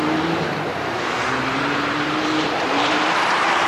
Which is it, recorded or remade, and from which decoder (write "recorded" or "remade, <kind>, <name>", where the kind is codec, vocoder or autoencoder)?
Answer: remade, vocoder, BigVGAN v2